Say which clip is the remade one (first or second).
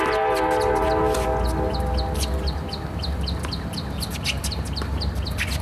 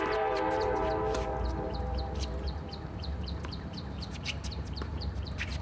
second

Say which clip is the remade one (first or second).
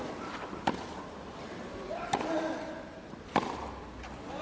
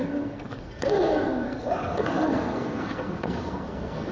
second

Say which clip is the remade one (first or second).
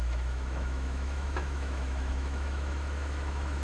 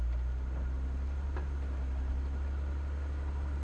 first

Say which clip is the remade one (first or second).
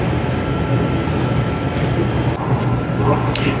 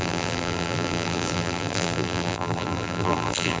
second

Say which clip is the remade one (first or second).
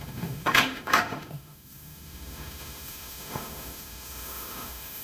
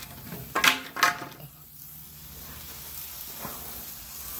first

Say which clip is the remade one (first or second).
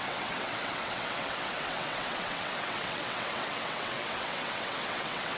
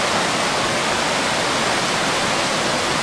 first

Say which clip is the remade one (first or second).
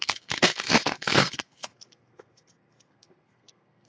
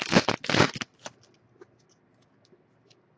first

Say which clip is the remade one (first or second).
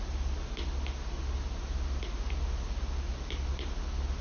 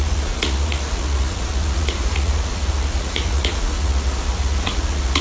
second